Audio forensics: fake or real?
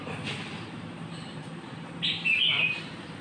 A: fake